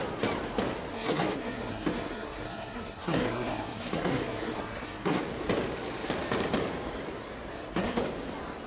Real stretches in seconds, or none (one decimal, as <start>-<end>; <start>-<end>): 0.0-0.9; 5.2-7.5; 8.0-8.7